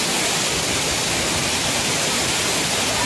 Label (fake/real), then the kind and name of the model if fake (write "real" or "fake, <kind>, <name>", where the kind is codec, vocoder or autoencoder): fake, vocoder, BigVGAN v2